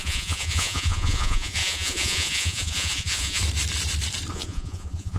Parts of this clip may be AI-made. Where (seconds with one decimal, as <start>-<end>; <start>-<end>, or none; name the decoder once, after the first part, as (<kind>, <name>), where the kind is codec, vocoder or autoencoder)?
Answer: 0.0-3.4 (vocoder, Vocos); 4.3-5.2